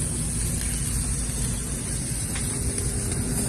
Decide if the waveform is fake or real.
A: real